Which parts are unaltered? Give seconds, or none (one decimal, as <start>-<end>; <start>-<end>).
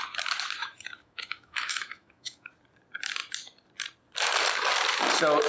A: 0.0-0.6; 2.5-5.5